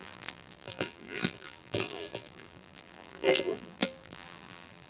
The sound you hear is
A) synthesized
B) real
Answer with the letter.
A